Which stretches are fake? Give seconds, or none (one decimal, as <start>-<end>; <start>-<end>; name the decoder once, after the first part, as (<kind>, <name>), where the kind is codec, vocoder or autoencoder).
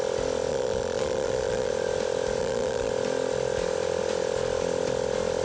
0.5-1.7 (vocoder, Vocos); 2.4-2.9